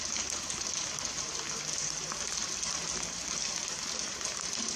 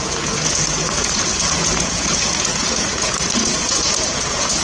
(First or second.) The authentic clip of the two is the first